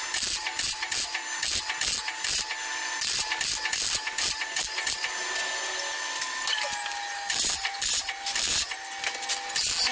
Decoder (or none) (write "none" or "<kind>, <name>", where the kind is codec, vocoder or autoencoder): none